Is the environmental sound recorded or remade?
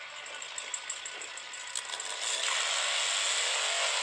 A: recorded